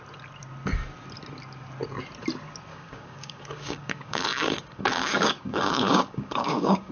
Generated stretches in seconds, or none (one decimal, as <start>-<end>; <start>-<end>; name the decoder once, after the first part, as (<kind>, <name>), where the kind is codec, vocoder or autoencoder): 2.7-6.9 (codec, DAC)